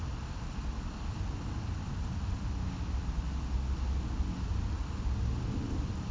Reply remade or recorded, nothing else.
recorded